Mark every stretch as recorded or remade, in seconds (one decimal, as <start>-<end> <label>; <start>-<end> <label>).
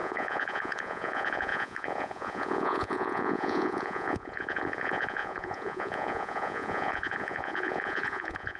0.0-8.6 remade